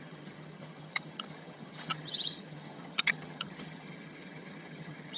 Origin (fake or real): fake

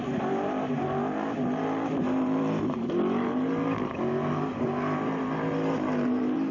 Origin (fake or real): fake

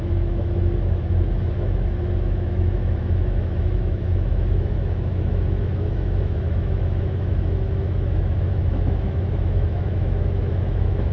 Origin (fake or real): fake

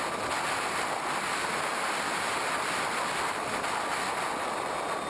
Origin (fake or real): real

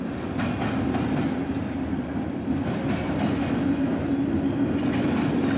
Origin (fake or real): real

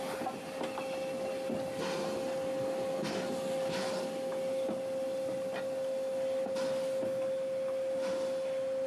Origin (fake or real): real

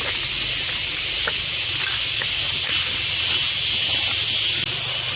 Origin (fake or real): real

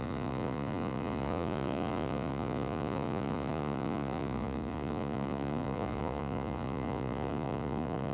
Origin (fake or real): fake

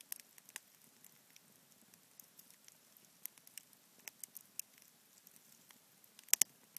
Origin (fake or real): real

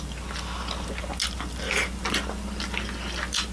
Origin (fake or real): real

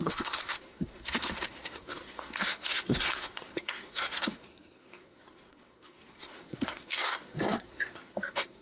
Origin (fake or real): fake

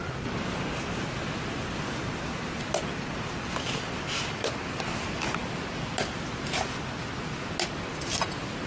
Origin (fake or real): real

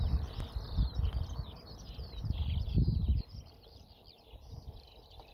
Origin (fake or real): fake